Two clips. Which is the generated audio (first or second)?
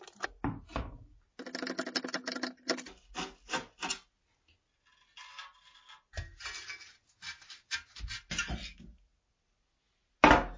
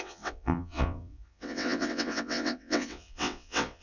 second